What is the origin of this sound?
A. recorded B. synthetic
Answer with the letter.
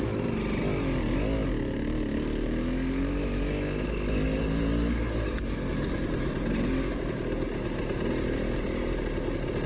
A